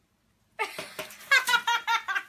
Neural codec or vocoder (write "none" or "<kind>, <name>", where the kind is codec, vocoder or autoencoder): none